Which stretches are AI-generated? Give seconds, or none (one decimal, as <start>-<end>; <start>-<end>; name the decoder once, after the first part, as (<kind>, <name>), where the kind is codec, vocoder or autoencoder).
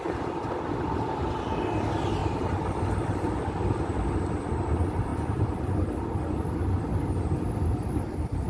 5.1-5.6 (vocoder, BigVGAN v2)